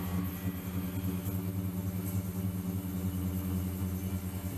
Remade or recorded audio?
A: recorded